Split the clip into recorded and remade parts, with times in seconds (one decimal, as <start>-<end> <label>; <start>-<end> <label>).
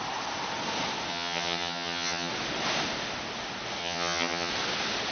0.0-1.1 recorded; 1.1-2.3 remade; 2.3-3.8 recorded; 3.8-4.5 remade; 4.5-5.1 recorded